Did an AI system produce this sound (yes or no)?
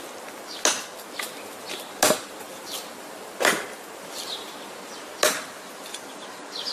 no